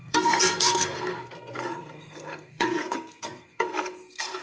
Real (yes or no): no